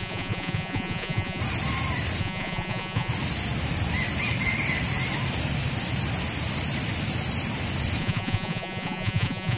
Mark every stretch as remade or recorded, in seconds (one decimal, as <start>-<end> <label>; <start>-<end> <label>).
0.0-1.4 remade; 1.4-2.2 recorded; 2.2-3.1 remade; 3.1-8.0 recorded; 8.0-9.6 remade